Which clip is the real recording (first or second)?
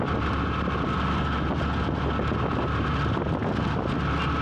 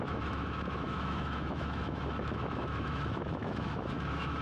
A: first